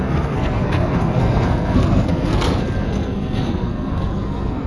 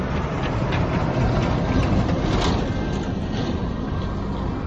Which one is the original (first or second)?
second